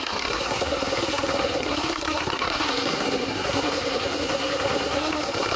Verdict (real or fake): fake